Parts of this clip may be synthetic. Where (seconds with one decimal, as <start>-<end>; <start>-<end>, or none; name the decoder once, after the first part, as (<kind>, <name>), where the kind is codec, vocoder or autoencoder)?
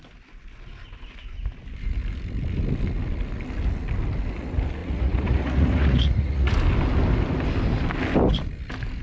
4.8-6.5 (vocoder, Vocos)